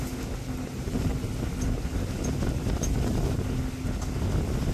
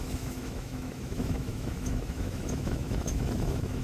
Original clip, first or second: first